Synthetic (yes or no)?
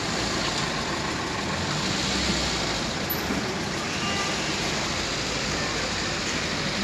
no